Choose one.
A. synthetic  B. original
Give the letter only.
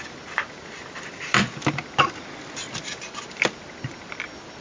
B